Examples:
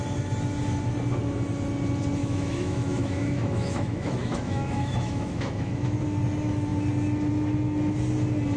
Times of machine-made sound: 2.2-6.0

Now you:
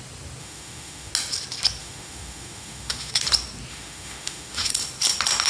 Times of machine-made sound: 0.4-1.1; 1.8-3.1; 3.7-4.7

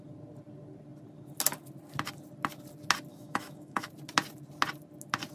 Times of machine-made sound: 3.1-3.9

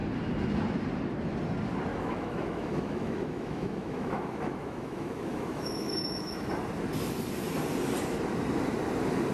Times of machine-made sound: 1.9-6.5

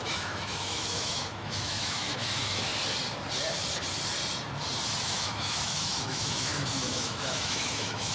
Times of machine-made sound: 0.0-2.7; 5.0-8.1